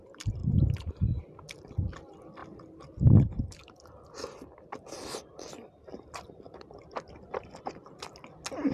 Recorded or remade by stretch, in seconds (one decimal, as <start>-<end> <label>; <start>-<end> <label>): 0.0-2.4 recorded; 2.4-7.6 remade; 7.6-8.7 recorded